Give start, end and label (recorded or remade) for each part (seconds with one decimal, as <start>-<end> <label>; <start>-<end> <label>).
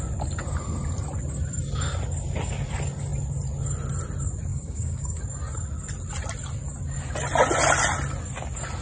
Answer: 0.0-4.5 recorded; 4.5-5.2 remade; 5.2-8.8 recorded